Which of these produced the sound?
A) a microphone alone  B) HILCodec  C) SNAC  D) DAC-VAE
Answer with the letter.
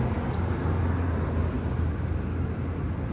A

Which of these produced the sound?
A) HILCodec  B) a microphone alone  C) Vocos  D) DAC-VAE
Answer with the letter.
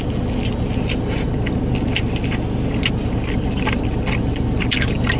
B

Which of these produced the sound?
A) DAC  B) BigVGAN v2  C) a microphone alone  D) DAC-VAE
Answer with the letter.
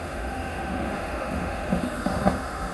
D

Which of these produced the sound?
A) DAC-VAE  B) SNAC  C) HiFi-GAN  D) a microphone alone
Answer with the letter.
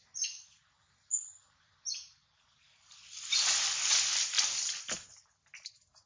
D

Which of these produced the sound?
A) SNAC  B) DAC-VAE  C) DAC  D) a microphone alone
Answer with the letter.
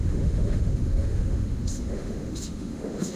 B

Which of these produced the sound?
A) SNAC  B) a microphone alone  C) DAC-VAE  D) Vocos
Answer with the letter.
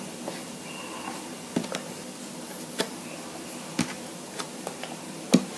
B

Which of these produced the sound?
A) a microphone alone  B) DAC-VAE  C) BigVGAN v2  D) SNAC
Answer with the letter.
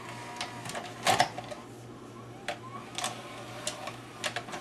A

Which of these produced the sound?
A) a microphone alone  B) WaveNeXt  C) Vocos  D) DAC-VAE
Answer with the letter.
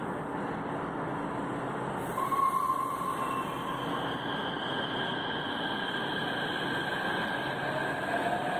A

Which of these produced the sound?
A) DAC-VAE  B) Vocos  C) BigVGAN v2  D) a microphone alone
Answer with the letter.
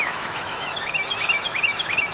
A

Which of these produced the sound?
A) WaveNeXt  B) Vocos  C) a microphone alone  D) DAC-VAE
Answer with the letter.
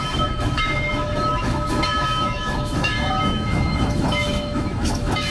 D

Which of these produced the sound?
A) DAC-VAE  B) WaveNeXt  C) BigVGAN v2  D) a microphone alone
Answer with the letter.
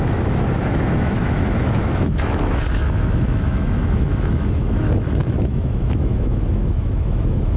A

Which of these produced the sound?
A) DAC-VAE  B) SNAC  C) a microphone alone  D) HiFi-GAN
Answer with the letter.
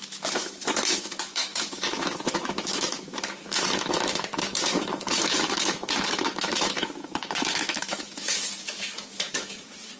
A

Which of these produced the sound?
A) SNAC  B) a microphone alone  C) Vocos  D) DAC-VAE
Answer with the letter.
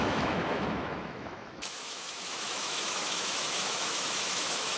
D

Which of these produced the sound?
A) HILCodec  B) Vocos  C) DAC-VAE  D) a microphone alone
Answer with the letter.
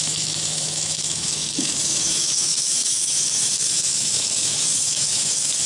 C